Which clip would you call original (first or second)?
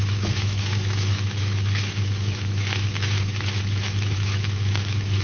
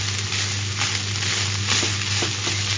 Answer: second